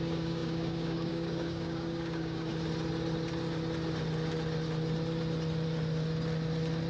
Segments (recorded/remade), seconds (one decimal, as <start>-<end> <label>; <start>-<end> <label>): 0.0-2.5 remade; 2.5-6.9 recorded